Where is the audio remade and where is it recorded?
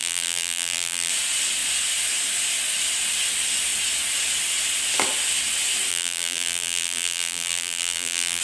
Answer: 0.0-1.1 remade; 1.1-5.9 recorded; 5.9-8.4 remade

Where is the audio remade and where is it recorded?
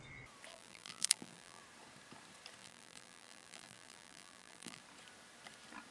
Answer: 0.0-0.5 recorded; 0.5-1.6 remade; 1.6-2.6 recorded; 2.6-4.8 remade; 4.8-5.9 recorded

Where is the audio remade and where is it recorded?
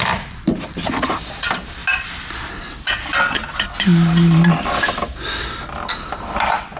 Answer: 0.0-1.8 remade; 1.8-5.9 recorded; 5.9-6.8 remade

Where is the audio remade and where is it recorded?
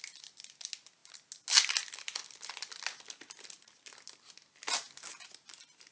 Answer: 0.0-5.9 recorded